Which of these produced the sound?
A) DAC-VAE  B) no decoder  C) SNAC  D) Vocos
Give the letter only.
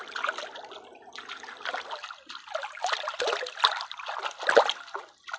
B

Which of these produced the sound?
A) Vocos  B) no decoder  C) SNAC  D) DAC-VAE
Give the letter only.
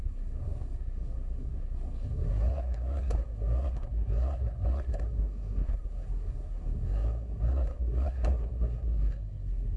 C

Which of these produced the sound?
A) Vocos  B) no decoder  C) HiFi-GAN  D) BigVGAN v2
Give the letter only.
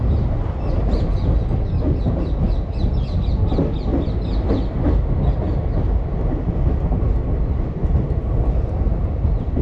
B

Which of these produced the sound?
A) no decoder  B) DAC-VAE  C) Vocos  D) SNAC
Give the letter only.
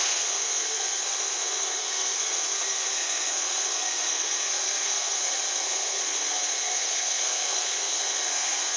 D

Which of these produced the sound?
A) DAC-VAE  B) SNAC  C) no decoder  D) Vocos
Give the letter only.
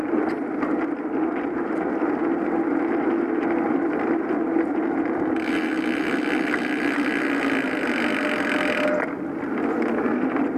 C